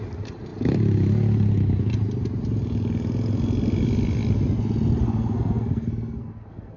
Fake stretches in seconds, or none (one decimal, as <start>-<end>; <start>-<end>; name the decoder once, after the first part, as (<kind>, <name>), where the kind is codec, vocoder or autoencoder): 5.0-6.8 (codec, SNAC)